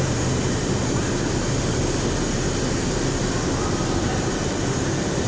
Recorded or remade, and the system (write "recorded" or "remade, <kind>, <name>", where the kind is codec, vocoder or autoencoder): remade, vocoder, BigVGAN v2